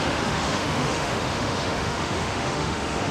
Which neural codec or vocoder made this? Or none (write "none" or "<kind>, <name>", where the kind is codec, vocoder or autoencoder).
autoencoder, DAC-VAE